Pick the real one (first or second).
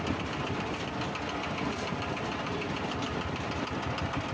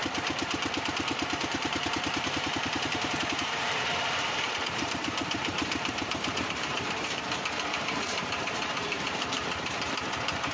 first